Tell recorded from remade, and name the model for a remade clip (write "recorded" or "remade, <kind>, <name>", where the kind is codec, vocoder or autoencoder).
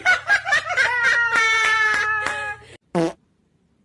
remade, vocoder, BigVGAN v2